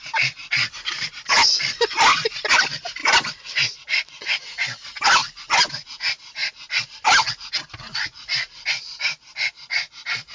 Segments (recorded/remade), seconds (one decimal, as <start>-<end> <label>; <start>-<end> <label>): 0.0-10.3 recorded